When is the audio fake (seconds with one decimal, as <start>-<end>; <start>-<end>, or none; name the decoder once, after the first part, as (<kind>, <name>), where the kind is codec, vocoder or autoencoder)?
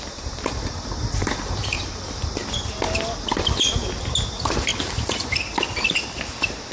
1.2-1.9 (vocoder, BigVGAN v2); 4.7-5.4